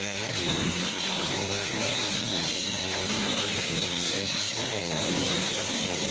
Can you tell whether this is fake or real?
fake